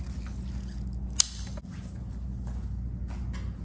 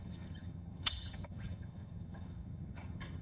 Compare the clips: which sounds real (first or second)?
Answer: first